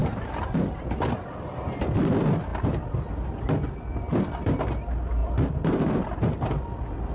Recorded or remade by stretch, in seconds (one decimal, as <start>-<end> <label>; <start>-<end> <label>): 0.0-0.6 remade; 0.6-7.1 recorded